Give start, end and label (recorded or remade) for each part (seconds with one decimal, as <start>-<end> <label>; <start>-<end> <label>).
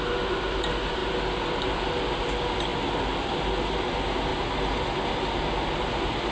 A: 0.0-6.3 recorded